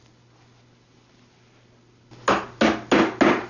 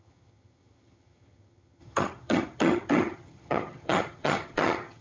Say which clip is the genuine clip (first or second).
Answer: first